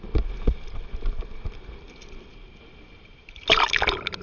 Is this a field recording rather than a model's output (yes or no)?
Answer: yes